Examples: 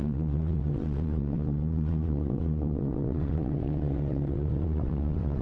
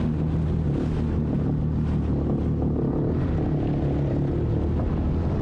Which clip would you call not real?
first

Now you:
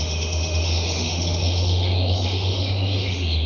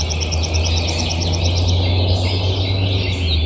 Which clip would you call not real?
first